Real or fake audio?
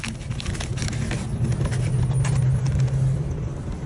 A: real